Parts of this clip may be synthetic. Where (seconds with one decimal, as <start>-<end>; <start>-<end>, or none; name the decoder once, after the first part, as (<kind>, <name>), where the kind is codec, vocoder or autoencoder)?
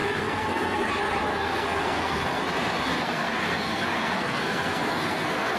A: 0.0-0.9 (codec, SNAC); 1.3-2.4; 2.9-5.6